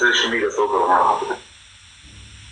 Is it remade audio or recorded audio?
recorded